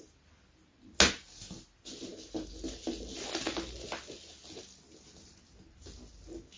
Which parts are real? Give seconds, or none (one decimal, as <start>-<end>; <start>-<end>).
0.0-6.6